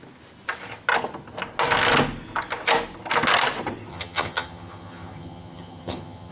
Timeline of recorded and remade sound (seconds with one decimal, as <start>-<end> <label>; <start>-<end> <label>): 0.0-3.9 recorded; 3.9-6.3 remade